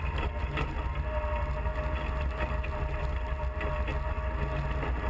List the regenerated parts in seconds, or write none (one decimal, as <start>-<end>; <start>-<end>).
none